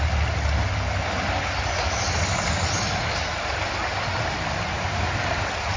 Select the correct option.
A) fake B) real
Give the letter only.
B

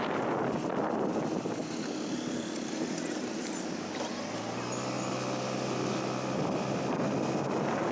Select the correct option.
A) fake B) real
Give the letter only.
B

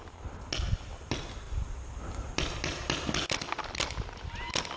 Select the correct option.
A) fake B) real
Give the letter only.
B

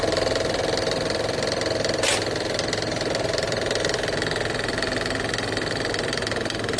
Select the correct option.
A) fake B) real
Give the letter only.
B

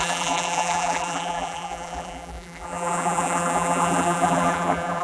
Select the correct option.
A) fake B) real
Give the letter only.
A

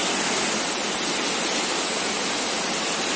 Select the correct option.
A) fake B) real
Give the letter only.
B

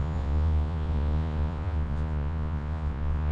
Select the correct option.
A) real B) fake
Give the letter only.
B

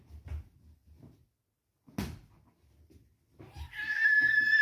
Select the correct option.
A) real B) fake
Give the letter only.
A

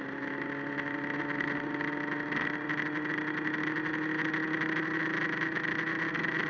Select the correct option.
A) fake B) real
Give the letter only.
B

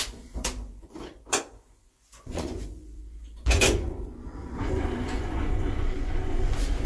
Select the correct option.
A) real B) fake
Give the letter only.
B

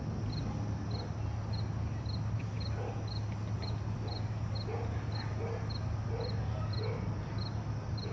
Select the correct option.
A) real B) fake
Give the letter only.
A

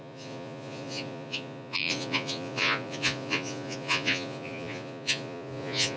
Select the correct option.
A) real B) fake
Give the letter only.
B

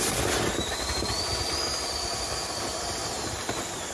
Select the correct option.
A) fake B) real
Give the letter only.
B